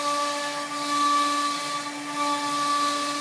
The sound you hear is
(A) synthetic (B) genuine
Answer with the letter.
B